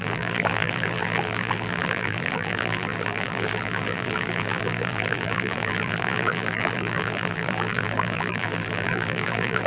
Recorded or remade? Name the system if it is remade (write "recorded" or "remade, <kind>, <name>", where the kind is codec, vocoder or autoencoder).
remade, vocoder, BigVGAN v2